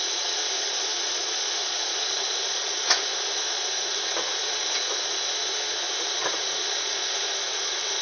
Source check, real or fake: fake